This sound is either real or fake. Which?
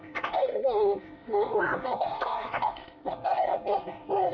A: fake